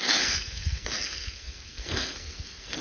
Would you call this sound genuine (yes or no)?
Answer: no